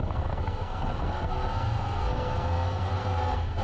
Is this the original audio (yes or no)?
no